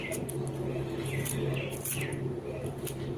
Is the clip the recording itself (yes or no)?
yes